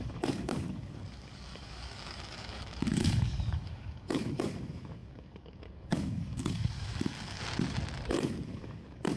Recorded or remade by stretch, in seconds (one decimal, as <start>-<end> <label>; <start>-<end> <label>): 0.0-7.4 remade; 7.4-8.1 recorded; 8.1-9.2 remade